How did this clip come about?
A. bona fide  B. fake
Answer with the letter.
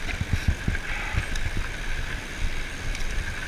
A